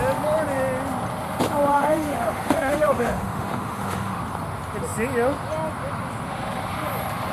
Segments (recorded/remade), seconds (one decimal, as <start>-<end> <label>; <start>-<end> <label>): 0.0-1.7 recorded; 1.7-4.2 remade; 4.2-7.3 recorded